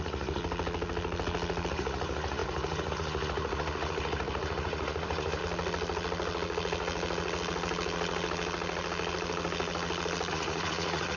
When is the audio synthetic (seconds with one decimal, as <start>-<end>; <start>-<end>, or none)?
0.0-0.4; 1.7-5.4; 10.3-11.2